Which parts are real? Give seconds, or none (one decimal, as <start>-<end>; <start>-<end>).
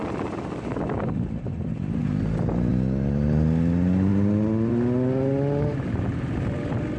0.0-7.0